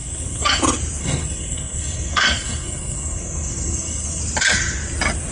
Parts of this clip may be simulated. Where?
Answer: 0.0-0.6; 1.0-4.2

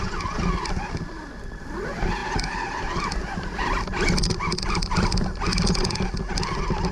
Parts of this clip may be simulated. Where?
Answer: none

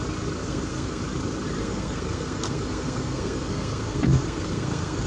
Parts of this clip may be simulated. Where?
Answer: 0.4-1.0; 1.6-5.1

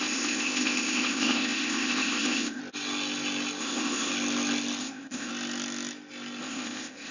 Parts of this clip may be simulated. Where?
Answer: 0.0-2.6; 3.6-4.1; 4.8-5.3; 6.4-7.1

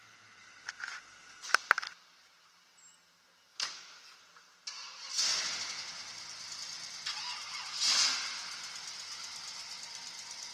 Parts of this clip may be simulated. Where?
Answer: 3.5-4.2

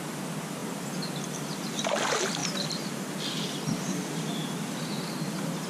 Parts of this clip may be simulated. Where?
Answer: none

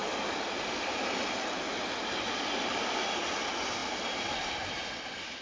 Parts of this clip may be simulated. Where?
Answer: none

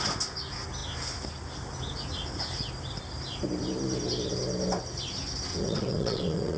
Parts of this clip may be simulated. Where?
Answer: 5.5-6.6